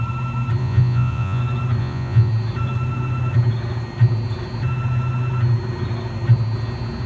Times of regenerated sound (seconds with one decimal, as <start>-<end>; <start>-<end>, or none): 0.6-1.4; 1.8-2.3